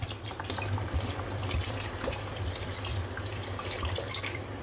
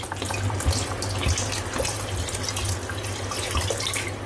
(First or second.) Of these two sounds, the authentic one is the second